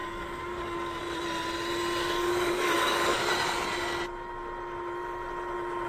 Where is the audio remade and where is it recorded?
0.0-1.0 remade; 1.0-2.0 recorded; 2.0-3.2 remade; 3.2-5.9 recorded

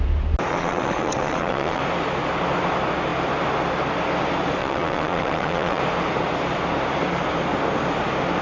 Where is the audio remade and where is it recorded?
0.0-0.5 recorded; 0.5-1.8 remade; 1.8-4.6 recorded; 4.6-5.8 remade; 5.8-8.4 recorded

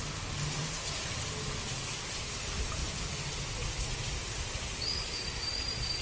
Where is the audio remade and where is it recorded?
0.0-0.6 recorded; 0.6-1.2 remade; 1.2-6.0 recorded

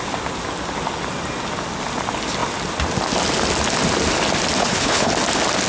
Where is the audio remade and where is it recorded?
0.0-4.6 recorded; 4.6-5.1 remade; 5.1-5.7 recorded

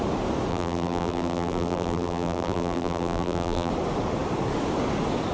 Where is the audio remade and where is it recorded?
0.0-0.5 recorded; 0.5-3.7 remade; 3.7-5.3 recorded

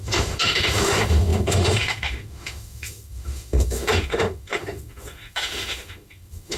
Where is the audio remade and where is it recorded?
0.0-6.6 remade

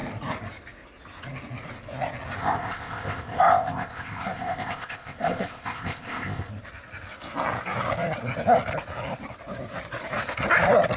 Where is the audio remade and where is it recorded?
0.0-2.4 recorded; 2.4-6.5 remade; 6.5-11.0 recorded